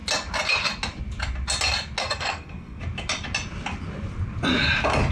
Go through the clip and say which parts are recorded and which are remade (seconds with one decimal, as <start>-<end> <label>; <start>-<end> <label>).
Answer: 0.0-2.0 recorded; 2.0-2.8 remade; 2.8-5.1 recorded